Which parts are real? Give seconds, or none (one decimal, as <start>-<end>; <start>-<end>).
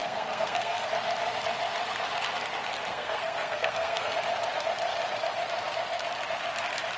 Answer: 0.9-2.9; 4.2-7.0